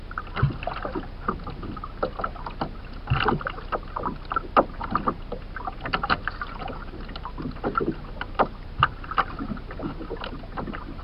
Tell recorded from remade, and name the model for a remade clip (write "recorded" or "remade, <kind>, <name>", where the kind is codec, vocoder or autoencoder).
recorded